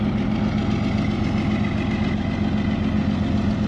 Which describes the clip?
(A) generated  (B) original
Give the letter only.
B